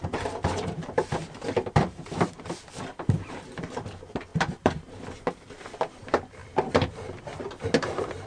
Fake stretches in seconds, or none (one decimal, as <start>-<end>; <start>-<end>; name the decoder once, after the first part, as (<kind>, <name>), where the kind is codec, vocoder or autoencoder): 0.0-1.2 (vocoder, BigVGAN v2); 1.7-6.4; 7.8-8.3